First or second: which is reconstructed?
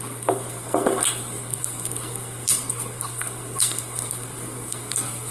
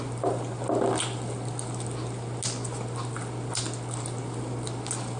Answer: first